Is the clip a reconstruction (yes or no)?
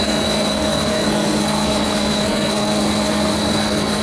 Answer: yes